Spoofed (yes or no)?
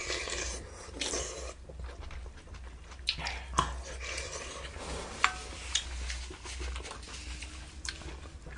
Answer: no